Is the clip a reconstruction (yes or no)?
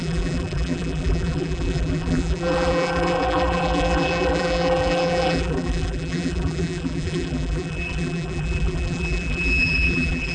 yes